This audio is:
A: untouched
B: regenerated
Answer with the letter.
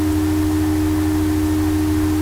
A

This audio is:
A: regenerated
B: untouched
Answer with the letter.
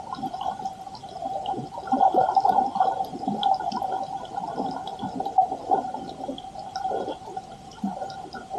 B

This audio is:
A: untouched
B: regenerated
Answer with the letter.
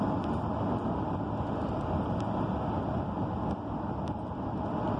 A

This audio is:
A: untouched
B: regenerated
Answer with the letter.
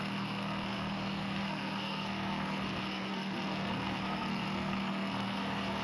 B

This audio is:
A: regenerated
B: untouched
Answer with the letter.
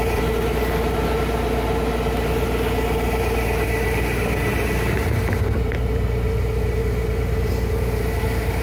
B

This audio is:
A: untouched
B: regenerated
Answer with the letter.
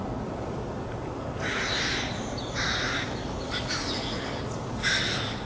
A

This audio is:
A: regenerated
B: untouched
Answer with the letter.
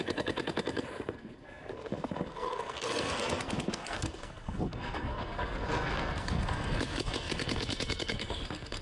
A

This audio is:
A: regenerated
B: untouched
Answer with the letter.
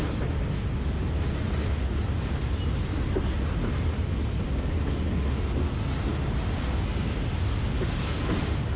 B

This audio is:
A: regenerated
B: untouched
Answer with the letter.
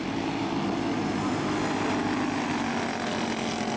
B